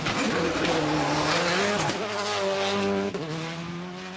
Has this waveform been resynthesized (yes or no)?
no